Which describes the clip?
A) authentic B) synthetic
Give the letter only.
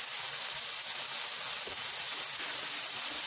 A